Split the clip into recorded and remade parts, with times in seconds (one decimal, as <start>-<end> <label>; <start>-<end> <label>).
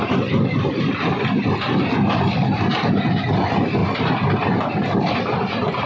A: 0.0-5.9 recorded